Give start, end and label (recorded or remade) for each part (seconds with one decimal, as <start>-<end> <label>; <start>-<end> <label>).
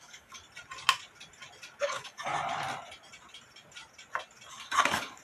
0.0-0.4 remade; 0.4-1.8 recorded; 1.8-2.3 remade; 2.3-4.5 recorded; 4.5-5.2 remade